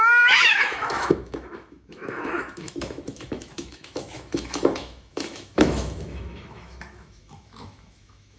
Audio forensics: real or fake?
fake